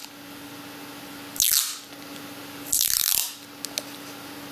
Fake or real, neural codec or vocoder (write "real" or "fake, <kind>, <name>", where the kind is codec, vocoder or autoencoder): real